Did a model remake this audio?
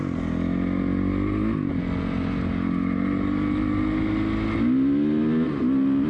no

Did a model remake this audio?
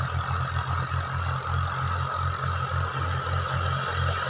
no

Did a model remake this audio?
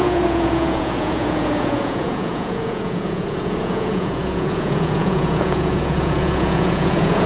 yes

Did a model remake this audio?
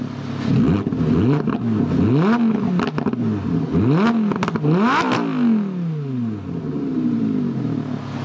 no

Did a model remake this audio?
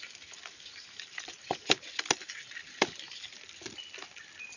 no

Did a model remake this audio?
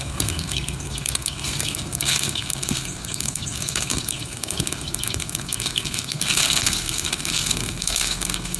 yes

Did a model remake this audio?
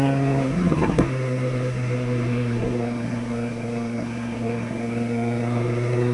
yes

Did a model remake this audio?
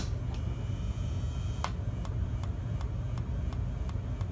no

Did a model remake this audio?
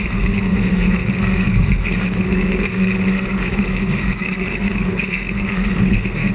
yes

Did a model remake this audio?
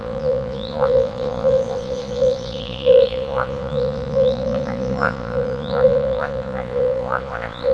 yes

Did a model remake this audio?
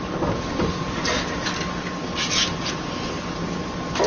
no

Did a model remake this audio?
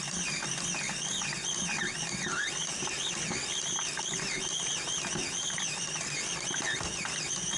no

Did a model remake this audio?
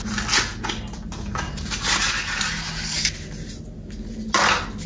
no